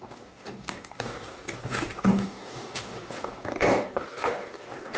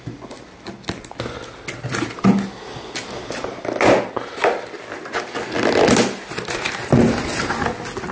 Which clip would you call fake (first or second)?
first